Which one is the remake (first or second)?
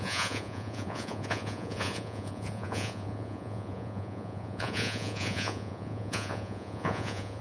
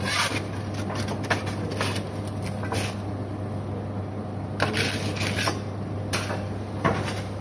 first